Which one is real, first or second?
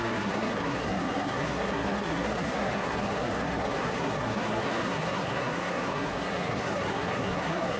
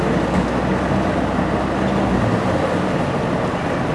second